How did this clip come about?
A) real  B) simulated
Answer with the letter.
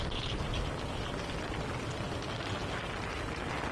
A